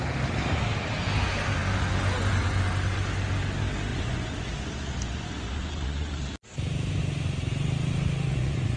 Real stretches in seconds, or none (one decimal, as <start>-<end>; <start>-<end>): 0.0-3.9; 6.2-8.3